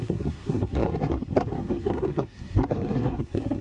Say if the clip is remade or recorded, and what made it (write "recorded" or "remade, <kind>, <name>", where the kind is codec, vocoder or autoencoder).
remade, codec, SNAC